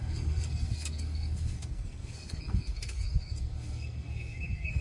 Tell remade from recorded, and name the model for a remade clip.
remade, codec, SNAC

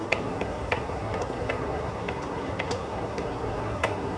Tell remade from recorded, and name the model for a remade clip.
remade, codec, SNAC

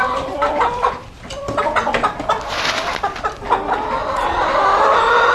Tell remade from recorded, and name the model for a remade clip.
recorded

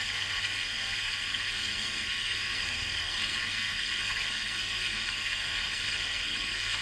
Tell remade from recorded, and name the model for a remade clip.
remade, codec, SNAC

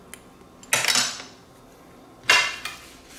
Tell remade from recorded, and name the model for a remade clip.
recorded